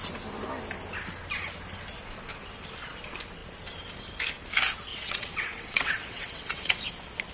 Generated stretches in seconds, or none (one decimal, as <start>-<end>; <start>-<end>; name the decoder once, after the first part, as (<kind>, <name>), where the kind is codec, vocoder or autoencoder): 4.9-6.8 (vocoder, WaveNeXt)

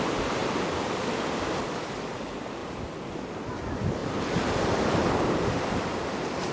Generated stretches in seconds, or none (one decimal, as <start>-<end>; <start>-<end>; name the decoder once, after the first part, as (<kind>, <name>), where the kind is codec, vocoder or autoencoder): 0.4-1.8 (vocoder, BigVGAN v2); 2.6-3.5; 4.0-5.7

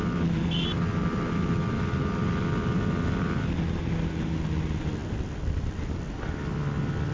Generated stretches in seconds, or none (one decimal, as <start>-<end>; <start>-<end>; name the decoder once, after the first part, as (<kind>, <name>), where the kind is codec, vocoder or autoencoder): none

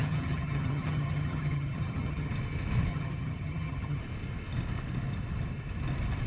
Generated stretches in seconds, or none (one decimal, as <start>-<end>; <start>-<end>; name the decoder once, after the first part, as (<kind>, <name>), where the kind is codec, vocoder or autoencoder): 0.0-2.3 (vocoder, HiFi-GAN); 2.9-4.0